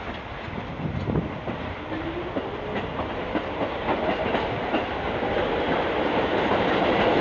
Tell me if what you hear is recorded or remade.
recorded